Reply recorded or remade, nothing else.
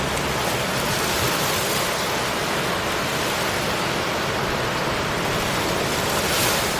recorded